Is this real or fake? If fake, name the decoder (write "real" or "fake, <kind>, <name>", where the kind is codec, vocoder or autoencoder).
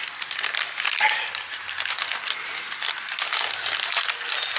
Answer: real